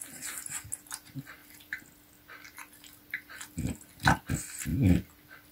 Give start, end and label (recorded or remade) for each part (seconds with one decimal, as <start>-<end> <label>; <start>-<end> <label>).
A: 0.0-5.5 recorded